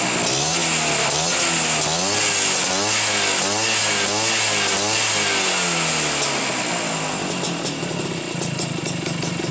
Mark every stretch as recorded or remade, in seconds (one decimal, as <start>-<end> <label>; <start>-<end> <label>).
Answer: 0.0-9.5 recorded